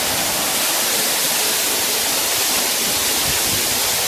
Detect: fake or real real